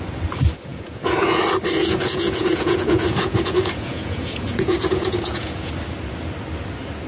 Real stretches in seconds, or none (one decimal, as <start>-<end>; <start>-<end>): 0.0-0.7; 1.4-1.8; 5.7-7.1